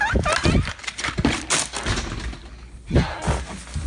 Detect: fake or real real